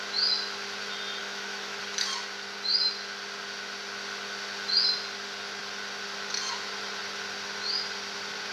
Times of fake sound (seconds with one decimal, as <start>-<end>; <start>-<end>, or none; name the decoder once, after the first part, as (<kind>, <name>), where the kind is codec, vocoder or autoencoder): 1.2-1.8 (autoencoder, DAC-VAE)